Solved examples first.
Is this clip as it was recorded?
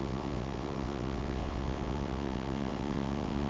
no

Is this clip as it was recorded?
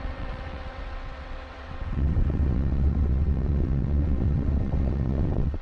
no